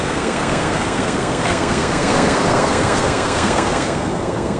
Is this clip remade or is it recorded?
remade